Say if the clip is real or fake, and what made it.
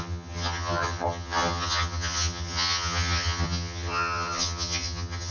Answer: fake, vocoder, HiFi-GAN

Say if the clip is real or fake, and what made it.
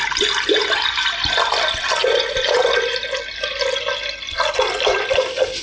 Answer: real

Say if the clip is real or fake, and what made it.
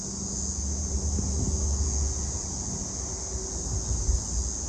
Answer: real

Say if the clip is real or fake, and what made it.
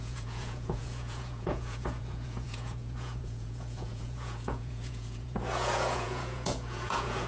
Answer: fake, vocoder, Vocos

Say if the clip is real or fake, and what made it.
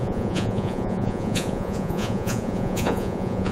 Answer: fake, vocoder, Vocos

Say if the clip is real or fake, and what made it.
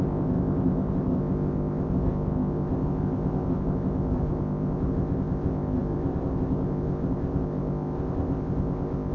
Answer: fake, codec, ZipCodec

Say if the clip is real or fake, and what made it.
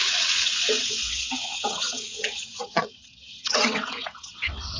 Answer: fake, vocoder, WaveNeXt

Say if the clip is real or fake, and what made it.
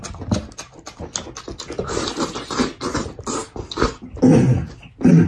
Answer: real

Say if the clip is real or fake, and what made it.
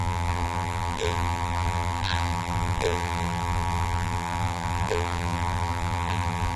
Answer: fake, vocoder, BigVGAN v2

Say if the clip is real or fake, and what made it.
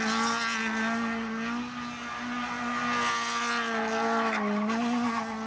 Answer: real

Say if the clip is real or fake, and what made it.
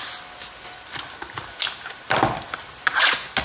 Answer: real